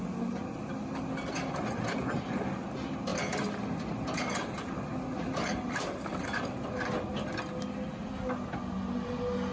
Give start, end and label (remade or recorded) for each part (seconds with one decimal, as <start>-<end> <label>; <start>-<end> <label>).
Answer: 0.0-9.5 recorded